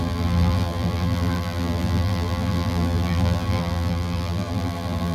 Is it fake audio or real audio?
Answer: fake